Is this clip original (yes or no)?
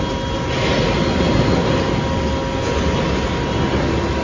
yes